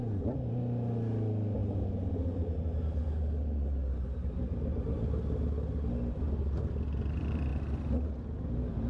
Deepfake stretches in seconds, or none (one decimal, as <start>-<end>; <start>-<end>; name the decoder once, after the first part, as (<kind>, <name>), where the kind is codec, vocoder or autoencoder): none

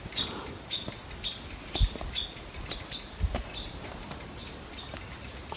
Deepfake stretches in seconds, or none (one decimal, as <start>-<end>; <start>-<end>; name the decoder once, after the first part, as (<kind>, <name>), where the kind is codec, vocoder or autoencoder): 0.0-5.6 (vocoder, BigVGAN v2)

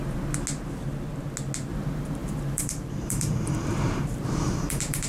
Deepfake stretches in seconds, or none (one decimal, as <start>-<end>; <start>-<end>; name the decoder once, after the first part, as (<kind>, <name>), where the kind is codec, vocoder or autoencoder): 2.2-5.1 (vocoder, BigVGAN v2)

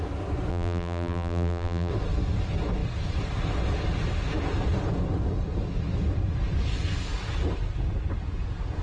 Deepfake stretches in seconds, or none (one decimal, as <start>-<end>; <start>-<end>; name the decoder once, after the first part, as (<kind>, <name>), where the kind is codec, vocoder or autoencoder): 0.5-1.9 (vocoder, BigVGAN v2)

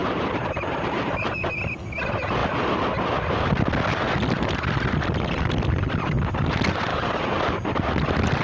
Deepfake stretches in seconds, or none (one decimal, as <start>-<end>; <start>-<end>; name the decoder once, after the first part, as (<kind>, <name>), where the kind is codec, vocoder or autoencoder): 0.0-1.5 (vocoder, BigVGAN v2)